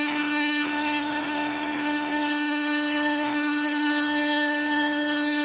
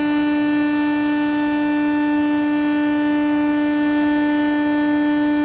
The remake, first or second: first